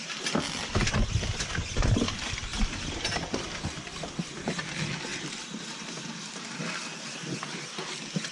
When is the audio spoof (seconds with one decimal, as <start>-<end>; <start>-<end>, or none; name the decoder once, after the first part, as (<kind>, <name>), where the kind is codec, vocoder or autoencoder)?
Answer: none

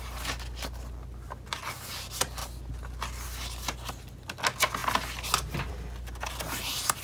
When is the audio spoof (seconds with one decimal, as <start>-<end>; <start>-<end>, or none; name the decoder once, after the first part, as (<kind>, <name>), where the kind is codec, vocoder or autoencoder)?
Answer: none

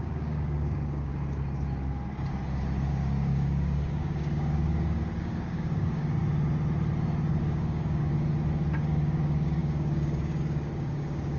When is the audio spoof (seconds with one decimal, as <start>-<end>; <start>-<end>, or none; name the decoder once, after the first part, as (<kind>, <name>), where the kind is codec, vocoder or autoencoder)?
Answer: 0.0-1.1 (codec, DAC); 2.9-6.2; 7.4-8.1; 8.9-11.4

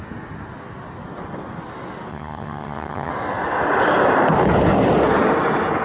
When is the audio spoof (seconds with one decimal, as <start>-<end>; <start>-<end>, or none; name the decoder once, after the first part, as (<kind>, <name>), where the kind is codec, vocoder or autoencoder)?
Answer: 2.1-3.1 (vocoder, HiFi-GAN)

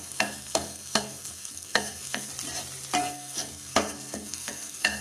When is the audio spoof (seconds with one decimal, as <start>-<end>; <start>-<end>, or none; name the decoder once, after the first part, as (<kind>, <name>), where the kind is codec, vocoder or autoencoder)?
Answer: 0.0-2.3 (codec, SNAC); 3.0-5.0

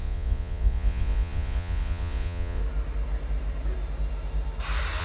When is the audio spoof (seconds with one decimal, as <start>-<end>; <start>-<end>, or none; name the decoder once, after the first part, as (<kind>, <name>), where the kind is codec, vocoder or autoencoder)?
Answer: 0.0-2.6 (vocoder, Vocos)

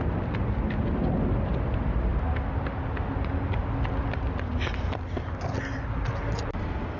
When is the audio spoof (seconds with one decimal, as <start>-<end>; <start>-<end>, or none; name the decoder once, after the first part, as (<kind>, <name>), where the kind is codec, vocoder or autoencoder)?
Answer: none

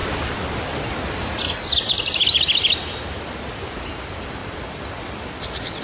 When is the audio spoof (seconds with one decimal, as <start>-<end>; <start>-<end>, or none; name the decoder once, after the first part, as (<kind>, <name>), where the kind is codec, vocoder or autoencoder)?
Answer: none